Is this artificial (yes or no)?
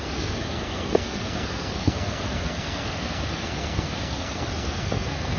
yes